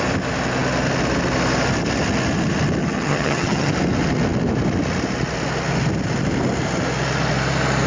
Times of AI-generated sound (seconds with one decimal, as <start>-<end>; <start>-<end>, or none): 2.8-3.7